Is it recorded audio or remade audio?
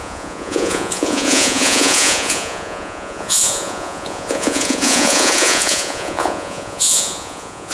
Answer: remade